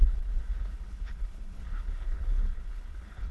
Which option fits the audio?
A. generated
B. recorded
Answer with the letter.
A